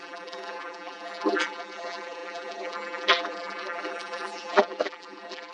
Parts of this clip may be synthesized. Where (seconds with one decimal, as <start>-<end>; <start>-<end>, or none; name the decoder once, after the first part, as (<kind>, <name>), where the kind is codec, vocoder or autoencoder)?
0.0-5.5 (vocoder, BigVGAN v2)